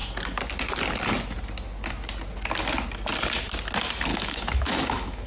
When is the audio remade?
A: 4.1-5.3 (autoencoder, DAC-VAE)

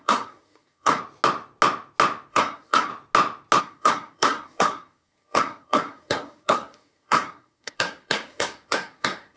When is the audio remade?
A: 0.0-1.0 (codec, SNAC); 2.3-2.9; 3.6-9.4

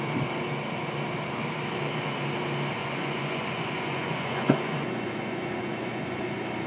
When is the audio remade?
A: 2.8-6.2 (vocoder, Vocos)

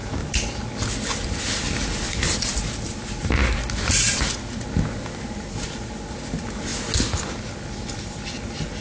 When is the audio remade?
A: 2.1-2.5 (vocoder, BigVGAN v2); 4.9-6.7; 7.9-8.8